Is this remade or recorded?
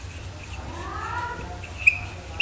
recorded